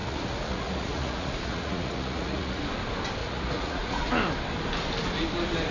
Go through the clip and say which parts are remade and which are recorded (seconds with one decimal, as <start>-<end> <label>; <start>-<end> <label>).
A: 0.0-2.6 remade; 2.6-3.2 recorded; 3.2-4.1 remade; 4.1-5.7 recorded